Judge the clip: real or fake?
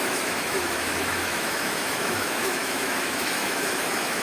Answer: fake